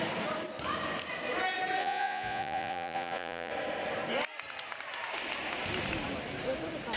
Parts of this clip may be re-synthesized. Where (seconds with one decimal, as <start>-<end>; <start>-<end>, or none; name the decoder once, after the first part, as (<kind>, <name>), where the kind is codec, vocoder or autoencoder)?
1.8-3.5 (vocoder, Vocos)